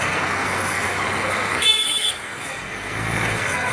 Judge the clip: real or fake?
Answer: fake